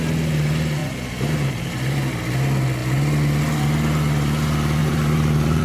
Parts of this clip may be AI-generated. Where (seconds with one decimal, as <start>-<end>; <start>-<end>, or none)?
0.8-2.1; 4.8-5.6